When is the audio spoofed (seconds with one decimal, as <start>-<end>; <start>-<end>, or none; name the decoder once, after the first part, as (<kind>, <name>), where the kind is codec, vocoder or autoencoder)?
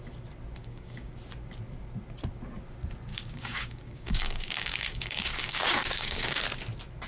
0.6-1.1 (codec, DAC); 3.1-6.4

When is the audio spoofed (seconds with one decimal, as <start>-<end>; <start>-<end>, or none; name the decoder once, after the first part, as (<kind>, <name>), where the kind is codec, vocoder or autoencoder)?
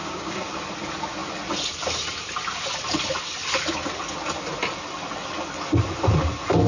0.0-0.6 (codec, DAC)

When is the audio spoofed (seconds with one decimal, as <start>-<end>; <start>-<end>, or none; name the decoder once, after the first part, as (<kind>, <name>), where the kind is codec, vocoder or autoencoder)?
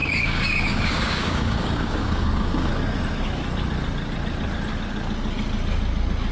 0.0-2.7 (codec, DAC)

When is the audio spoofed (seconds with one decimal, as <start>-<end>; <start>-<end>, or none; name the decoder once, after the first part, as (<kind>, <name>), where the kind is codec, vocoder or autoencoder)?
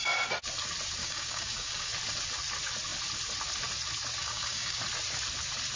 1.0-1.9 (codec, DAC); 4.2-4.8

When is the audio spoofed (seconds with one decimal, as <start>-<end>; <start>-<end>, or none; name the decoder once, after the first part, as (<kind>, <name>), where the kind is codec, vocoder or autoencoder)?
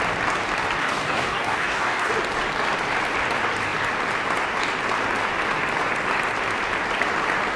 0.8-2.1 (codec, DAC)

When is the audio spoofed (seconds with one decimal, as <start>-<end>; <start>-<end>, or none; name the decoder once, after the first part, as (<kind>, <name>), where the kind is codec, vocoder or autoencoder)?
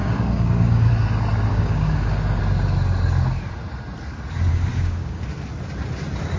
0.0-0.9 (codec, DAC); 1.5-2.4; 4.5-5.3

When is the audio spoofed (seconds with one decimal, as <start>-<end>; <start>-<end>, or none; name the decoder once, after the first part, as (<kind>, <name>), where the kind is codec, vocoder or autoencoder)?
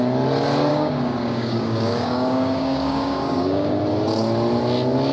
0.7-3.8 (codec, DAC)